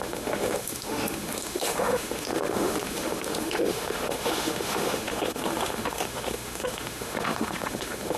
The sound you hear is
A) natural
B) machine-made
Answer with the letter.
B